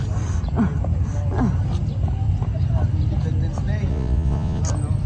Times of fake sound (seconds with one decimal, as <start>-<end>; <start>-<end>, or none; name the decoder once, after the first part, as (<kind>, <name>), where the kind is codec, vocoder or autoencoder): 3.9-4.6 (vocoder, Vocos)